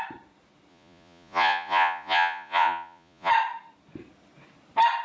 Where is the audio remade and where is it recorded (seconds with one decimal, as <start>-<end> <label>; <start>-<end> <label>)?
0.0-0.7 recorded; 0.7-3.3 remade; 3.3-5.0 recorded